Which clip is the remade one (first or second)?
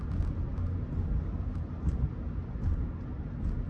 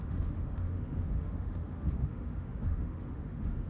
second